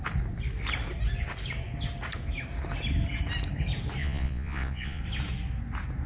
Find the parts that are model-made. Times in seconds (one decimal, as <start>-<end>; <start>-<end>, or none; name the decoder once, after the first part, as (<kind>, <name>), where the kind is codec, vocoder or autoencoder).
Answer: 4.0-5.0 (vocoder, Vocos)